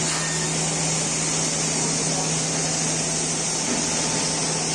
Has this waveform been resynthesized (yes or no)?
no